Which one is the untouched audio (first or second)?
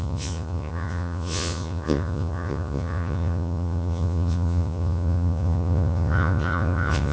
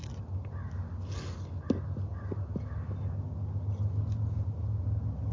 second